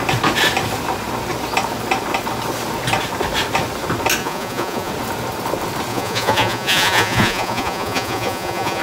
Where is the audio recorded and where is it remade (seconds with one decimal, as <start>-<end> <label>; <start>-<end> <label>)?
0.0-4.2 recorded; 4.2-4.9 remade; 4.9-5.9 recorded; 5.9-8.8 remade